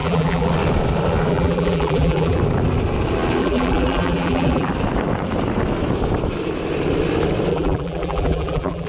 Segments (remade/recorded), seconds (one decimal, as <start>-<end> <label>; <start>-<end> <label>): 0.0-0.5 remade; 0.5-1.3 recorded; 1.3-2.4 remade; 2.4-3.4 recorded; 3.4-4.7 remade; 4.7-7.5 recorded; 7.5-8.9 remade